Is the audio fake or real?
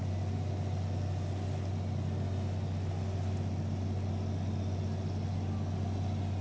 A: real